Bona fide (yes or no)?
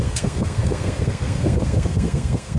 no